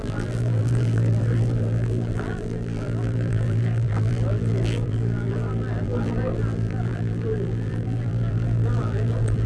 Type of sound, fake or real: fake